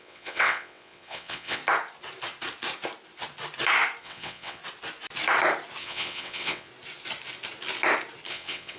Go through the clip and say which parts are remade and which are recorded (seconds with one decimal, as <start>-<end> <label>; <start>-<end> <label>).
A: 0.0-1.6 remade; 1.6-4.0 recorded; 4.0-4.6 remade; 4.6-5.8 recorded; 5.8-6.7 remade; 6.7-8.3 recorded; 8.3-8.8 remade